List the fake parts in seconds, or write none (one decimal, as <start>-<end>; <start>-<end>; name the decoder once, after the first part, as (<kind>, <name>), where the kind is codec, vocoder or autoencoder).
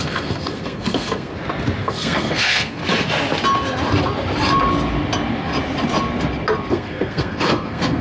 0.0-1.3 (codec, SNAC); 1.8-2.8; 6.7-8.0